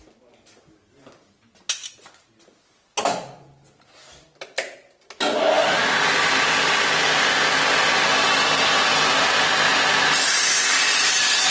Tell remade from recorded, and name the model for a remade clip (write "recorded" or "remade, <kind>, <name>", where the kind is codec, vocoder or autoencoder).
recorded